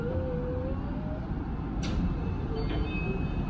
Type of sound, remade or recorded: recorded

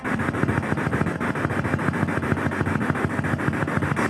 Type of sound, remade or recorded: recorded